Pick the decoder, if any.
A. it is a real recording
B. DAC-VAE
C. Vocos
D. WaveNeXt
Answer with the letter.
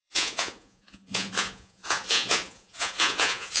C